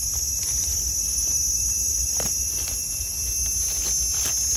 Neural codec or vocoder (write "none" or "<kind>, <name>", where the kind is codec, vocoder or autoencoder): none